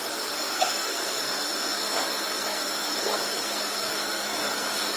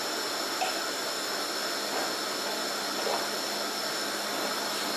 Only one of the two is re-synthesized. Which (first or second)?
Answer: first